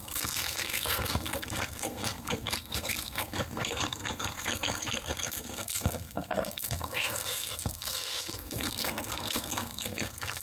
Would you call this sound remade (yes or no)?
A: yes